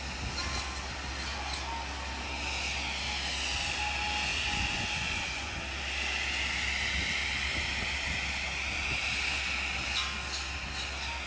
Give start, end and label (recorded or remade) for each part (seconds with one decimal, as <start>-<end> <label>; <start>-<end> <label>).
0.0-4.3 recorded; 4.3-5.6 remade; 5.6-11.3 recorded